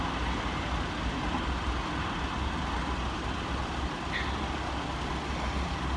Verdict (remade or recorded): recorded